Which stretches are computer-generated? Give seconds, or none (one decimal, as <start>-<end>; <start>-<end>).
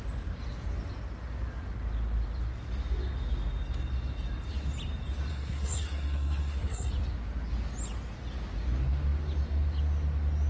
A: 5.3-6.9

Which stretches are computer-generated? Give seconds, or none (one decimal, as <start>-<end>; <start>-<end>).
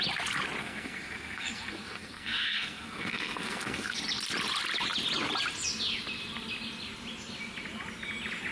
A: 0.6-4.0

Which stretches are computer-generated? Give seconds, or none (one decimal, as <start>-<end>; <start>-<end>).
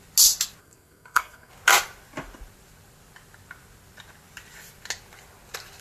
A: 0.6-1.5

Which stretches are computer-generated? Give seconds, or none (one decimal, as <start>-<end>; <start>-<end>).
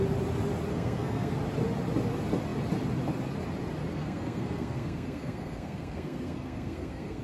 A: 0.7-1.4; 3.9-7.2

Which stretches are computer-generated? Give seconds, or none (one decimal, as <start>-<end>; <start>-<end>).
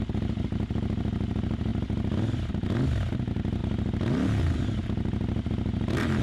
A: none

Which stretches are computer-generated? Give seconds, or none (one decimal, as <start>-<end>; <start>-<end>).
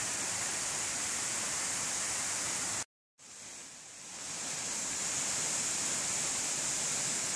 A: none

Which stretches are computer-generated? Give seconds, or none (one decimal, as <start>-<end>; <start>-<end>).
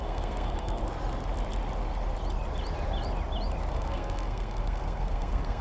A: 0.0-0.8; 3.7-5.6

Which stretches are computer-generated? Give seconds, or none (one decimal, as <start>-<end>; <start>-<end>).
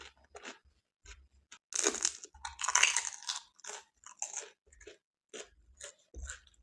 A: none